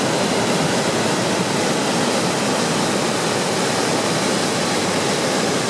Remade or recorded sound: recorded